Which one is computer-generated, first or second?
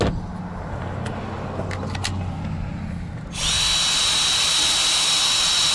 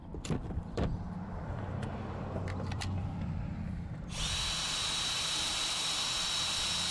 second